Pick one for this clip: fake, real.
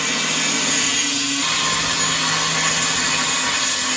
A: real